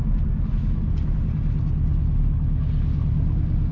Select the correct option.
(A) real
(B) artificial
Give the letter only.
A